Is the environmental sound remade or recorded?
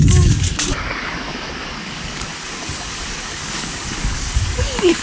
remade